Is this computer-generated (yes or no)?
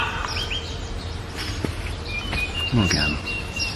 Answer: yes